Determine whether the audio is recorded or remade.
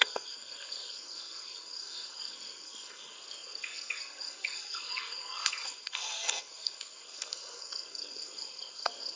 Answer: remade